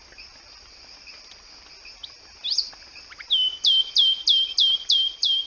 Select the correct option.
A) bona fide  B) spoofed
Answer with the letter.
A